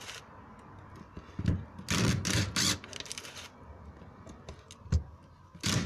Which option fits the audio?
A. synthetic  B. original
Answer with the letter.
B